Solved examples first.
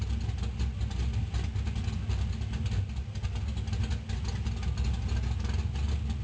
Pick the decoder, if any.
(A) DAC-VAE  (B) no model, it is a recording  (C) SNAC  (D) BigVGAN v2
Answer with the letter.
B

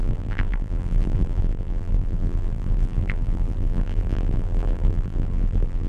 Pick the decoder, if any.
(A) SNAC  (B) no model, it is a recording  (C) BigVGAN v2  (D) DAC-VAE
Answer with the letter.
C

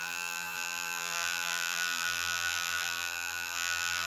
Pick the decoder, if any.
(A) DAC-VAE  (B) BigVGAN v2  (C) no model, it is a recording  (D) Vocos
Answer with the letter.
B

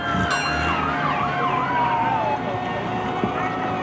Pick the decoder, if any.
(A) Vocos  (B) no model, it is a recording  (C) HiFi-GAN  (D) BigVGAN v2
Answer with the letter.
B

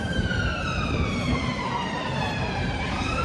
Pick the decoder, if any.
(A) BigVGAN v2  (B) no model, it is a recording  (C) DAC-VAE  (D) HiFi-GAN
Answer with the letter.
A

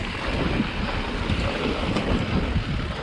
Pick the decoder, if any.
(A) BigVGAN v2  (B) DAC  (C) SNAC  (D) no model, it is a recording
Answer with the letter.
D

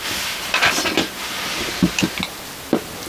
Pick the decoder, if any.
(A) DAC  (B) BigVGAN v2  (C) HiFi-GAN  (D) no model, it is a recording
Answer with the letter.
D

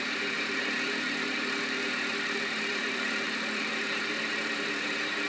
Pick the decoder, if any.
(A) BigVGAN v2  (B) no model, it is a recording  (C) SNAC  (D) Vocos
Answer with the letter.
A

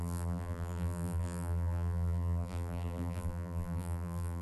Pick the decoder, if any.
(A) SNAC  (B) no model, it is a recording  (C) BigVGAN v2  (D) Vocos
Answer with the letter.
C